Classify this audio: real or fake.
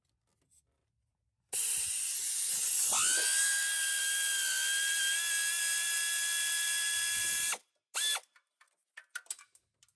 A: real